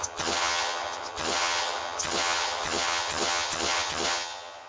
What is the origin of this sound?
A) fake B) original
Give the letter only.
A